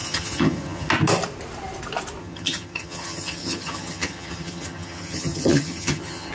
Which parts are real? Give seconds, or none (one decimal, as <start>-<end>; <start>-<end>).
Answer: 0.9-2.2